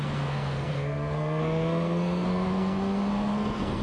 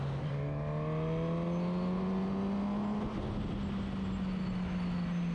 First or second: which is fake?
first